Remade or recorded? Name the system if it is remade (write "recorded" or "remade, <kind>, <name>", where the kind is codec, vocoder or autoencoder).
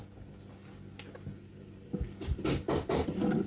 recorded